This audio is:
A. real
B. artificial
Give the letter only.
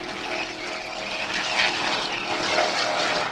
A